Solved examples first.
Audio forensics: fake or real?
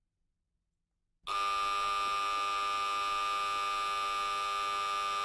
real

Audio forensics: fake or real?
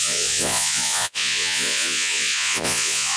fake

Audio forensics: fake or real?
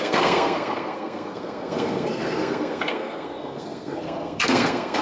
fake